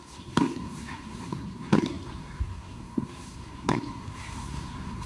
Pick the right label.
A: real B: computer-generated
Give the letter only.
B